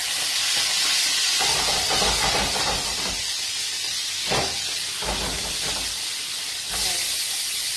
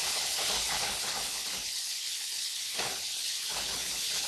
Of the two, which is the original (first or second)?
first